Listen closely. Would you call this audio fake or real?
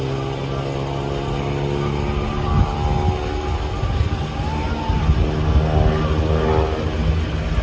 real